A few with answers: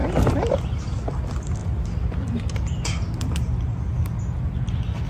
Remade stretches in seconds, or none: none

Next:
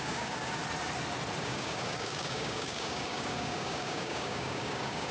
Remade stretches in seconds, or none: 0.0-0.6 (codec, DAC); 1.4-5.1

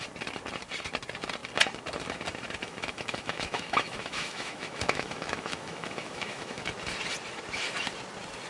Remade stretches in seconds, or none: 2.6-6.6 (autoencoder, DAC-VAE)

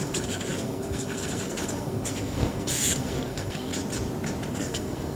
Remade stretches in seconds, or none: 0.0-3.7 (codec, SNAC); 4.5-5.2

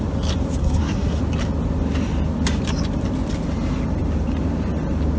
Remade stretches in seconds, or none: 0.6-1.2 (codec, SNAC)

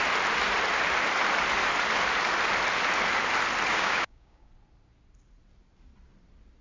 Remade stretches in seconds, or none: 3.7-4.5 (codec, DAC)

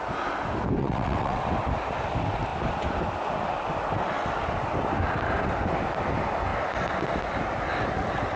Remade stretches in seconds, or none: 0.8-1.4 (vocoder, WaveNeXt)

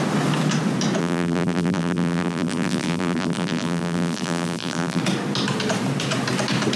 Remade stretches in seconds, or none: 1.0-5.0 (vocoder, BigVGAN v2)